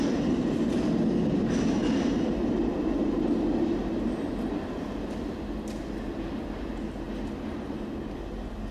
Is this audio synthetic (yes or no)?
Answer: no